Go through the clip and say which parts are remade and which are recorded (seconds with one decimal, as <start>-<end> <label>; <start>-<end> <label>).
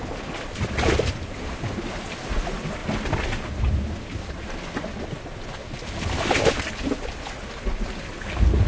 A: 0.0-8.7 recorded